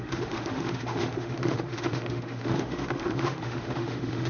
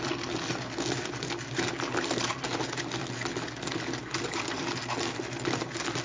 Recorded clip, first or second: second